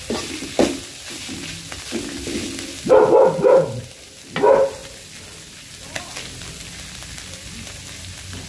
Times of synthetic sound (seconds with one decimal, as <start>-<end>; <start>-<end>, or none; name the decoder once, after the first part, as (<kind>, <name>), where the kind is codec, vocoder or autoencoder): none